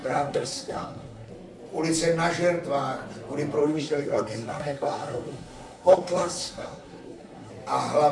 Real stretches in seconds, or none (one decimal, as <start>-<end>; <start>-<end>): 1.3-3.6; 7.5-8.1